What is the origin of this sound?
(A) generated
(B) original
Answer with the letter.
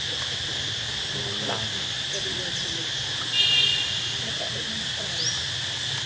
B